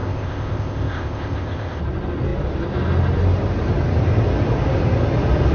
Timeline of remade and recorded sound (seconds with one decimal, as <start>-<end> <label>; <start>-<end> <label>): 0.0-1.8 remade; 1.8-5.5 recorded